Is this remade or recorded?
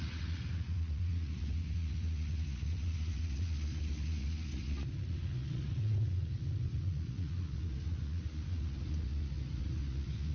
remade